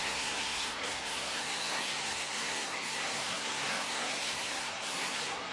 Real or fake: fake